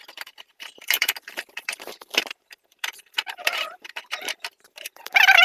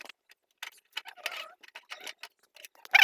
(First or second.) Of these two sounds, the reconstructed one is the first